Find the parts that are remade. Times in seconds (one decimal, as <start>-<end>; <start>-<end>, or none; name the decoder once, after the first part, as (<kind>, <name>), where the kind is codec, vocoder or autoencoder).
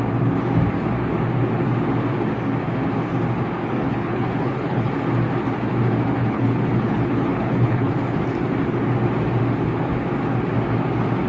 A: 3.9-4.9 (codec, HILCodec); 6.2-7.9